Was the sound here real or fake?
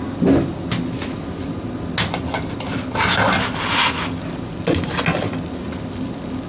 real